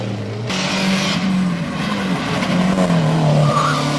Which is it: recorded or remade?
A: recorded